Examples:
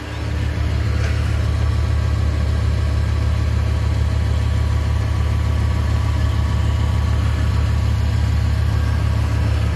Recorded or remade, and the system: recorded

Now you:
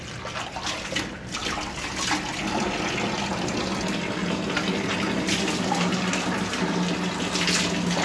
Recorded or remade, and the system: recorded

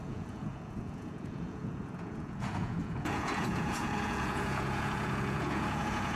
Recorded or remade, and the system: remade, vocoder, Vocos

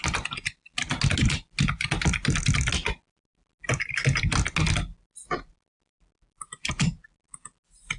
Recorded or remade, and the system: recorded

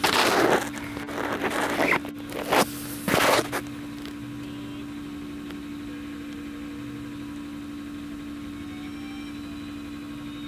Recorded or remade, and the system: recorded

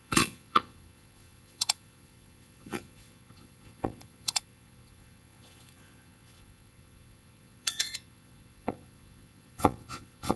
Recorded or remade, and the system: remade, vocoder, Vocos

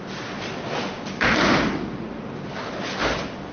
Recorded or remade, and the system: recorded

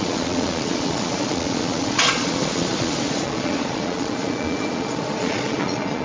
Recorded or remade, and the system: remade, vocoder, Vocos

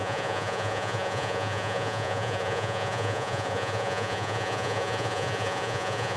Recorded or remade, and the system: remade, vocoder, Vocos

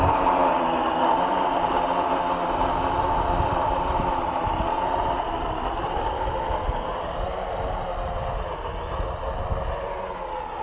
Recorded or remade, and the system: recorded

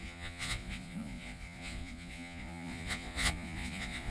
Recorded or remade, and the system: remade, vocoder, Vocos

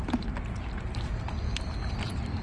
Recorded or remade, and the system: recorded